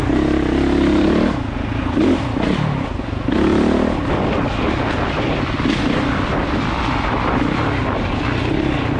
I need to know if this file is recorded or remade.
recorded